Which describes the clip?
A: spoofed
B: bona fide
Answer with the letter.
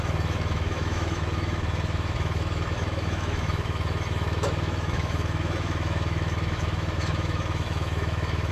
A